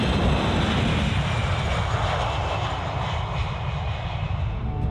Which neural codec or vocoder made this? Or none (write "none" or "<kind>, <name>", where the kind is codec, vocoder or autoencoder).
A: none